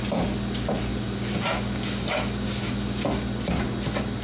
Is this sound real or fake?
real